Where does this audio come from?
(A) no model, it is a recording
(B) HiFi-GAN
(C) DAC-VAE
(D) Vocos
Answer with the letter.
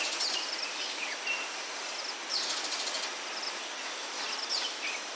A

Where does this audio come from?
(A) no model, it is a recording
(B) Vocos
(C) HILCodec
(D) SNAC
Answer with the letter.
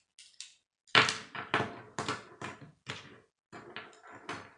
A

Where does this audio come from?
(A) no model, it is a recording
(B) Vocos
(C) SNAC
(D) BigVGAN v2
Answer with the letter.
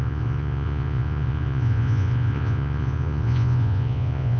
B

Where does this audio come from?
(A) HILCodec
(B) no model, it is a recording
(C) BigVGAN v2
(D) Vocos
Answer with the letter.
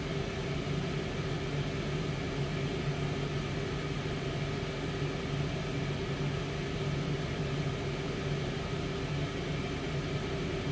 B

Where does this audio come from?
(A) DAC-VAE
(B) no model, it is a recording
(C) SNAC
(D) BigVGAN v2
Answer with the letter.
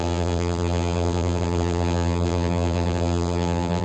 D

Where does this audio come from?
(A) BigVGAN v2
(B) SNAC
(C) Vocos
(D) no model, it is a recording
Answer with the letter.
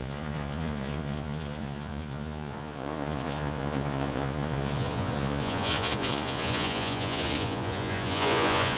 C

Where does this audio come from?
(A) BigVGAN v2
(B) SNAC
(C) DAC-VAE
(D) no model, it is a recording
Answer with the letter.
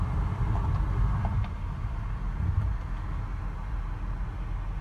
D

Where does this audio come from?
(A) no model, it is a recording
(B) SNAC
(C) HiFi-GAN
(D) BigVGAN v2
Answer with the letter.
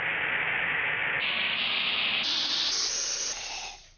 A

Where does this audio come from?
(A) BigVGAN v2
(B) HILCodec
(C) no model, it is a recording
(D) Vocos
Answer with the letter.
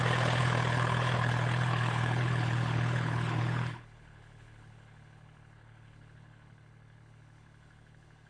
B